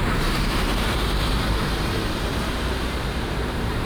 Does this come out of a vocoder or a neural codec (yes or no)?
yes